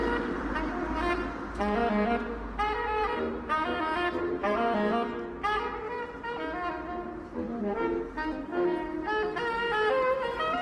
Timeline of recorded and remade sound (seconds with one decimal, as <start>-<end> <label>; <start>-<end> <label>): 0.0-4.9 remade; 4.9-7.6 recorded; 7.6-10.6 remade